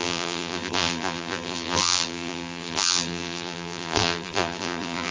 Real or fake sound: fake